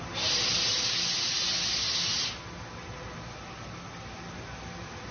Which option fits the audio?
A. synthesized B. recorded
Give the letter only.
B